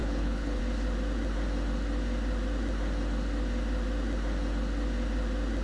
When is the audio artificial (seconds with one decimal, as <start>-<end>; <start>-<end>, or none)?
0.0-0.6